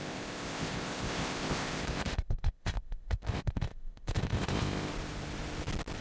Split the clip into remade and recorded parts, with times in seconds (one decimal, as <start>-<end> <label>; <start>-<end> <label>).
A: 0.0-4.9 remade; 4.9-6.0 recorded